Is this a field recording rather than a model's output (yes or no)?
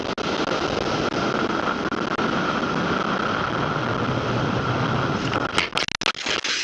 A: yes